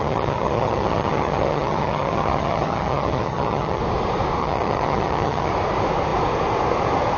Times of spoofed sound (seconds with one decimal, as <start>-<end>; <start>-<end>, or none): 0.0-3.8; 4.4-5.5